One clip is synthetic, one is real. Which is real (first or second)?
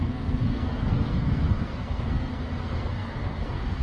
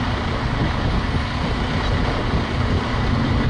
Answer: second